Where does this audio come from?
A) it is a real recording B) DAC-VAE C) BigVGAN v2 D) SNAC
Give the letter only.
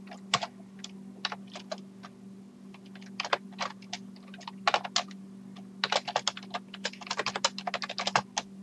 A